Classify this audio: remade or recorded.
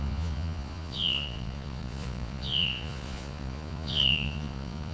remade